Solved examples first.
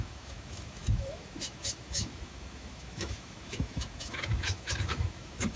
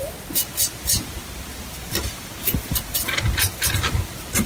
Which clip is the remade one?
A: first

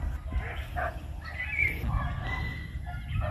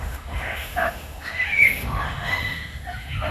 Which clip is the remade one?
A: second